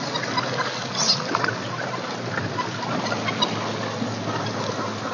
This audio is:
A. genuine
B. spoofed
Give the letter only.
A